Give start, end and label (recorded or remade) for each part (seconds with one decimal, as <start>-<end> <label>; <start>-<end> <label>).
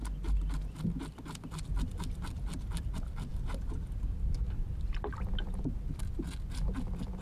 0.0-7.2 recorded